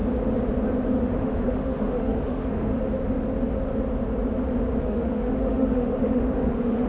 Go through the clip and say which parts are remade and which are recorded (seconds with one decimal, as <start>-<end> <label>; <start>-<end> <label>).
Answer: 0.0-1.0 recorded; 1.0-2.7 remade; 2.7-4.8 recorded; 4.8-6.9 remade